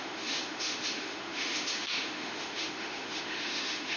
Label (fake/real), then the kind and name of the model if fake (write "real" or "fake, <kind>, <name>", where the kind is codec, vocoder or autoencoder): fake, autoencoder, DAC-VAE